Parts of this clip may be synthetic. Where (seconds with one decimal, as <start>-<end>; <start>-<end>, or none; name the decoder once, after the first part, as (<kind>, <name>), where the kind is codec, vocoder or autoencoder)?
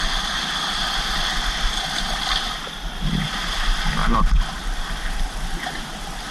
0.0-4.0 (vocoder, BigVGAN v2); 4.6-6.3